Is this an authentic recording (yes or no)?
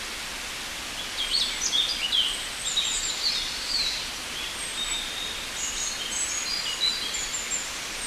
yes